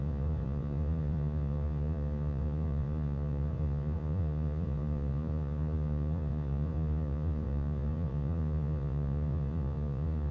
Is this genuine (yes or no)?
no